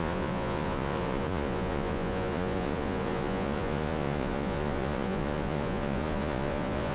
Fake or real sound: fake